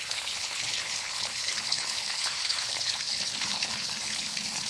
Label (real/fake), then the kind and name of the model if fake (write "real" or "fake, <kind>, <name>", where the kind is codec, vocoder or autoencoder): fake, codec, HILCodec